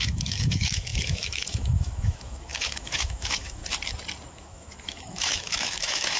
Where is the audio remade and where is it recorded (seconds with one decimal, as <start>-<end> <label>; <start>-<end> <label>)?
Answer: 0.0-3.6 remade; 3.6-4.3 recorded; 4.3-6.2 remade